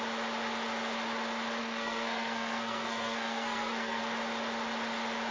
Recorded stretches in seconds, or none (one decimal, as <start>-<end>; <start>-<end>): 0.0-1.6; 4.0-5.3